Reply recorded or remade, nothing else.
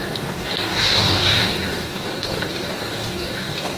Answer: remade